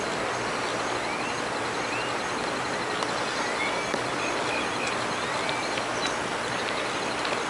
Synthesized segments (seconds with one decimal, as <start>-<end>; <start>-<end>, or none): 6.3-7.5